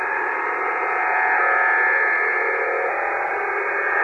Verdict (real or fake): real